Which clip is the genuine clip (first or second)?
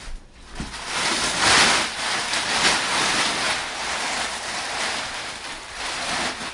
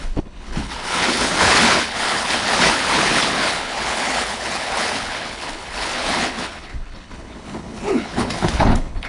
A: first